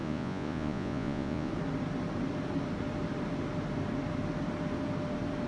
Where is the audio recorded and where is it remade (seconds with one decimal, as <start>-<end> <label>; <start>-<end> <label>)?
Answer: 0.0-1.5 remade; 1.5-5.5 recorded